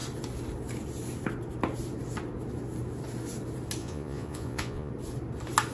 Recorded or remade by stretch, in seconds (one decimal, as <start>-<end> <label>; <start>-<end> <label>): 0.0-3.8 recorded; 3.8-4.9 remade; 4.9-5.7 recorded